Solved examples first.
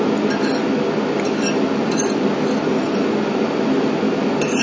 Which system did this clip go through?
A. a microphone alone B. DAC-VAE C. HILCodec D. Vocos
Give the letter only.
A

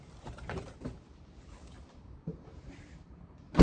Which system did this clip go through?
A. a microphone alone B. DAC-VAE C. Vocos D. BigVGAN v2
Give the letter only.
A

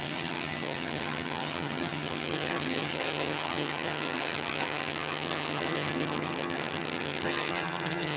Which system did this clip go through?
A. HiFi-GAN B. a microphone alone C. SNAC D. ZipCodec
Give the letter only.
A